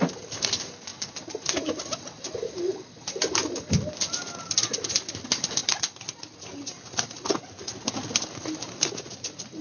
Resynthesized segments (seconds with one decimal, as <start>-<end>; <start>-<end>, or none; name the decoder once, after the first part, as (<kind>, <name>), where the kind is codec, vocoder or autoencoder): none